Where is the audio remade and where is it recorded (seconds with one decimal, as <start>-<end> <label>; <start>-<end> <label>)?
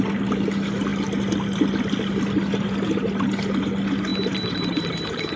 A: 0.0-5.4 recorded